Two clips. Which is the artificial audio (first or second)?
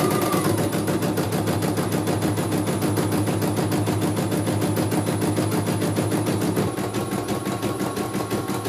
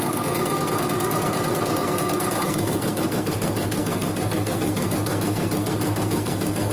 second